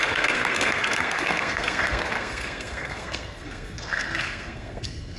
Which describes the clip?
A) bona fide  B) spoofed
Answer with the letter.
B